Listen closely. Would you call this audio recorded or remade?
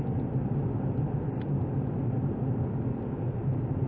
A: remade